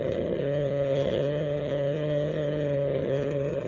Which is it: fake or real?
fake